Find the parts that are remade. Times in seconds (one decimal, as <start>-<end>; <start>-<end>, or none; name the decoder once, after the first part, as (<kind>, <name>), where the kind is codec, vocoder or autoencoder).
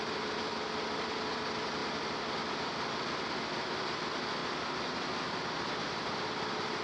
0.0-4.4 (vocoder, BigVGAN v2); 5.8-6.8